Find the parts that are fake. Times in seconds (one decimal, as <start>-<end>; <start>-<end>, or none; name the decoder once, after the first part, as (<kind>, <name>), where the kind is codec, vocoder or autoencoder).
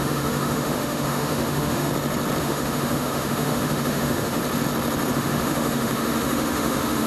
0.0-1.9 (autoencoder, DAC-VAE); 2.4-4.4; 5.1-7.1